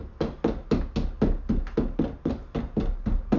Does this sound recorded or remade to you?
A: recorded